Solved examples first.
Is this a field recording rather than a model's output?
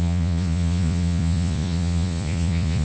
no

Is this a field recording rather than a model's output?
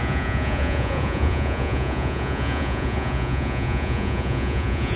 no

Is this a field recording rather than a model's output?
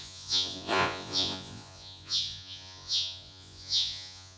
no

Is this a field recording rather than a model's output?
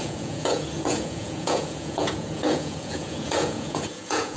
no